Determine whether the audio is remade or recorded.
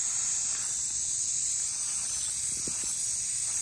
recorded